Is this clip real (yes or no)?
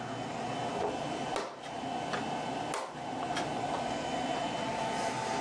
yes